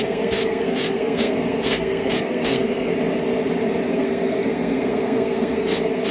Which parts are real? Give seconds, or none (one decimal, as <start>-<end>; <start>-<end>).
2.9-3.9